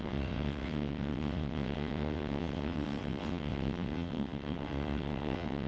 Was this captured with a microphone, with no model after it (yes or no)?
no